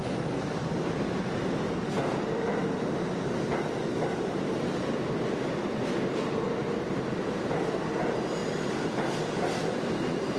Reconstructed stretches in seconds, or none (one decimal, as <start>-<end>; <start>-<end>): 8.4-9.4